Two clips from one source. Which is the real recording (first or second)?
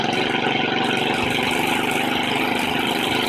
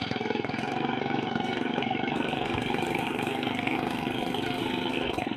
first